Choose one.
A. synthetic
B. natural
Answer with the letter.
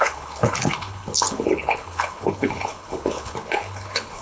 A